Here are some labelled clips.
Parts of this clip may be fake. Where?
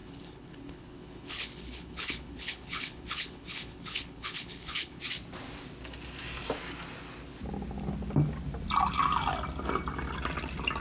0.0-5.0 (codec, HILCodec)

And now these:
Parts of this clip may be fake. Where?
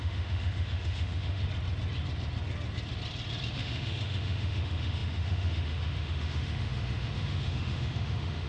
0.0-1.4 (autoencoder, DAC-VAE); 3.5-8.5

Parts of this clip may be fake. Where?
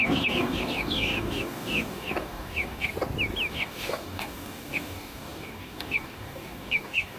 0.0-2.9 (codec, DAC); 3.5-7.2